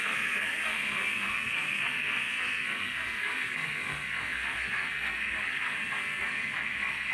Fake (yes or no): yes